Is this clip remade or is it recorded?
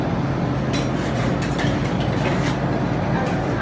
recorded